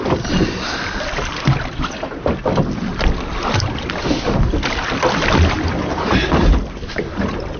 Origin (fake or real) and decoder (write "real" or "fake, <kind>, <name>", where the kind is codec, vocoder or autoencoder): real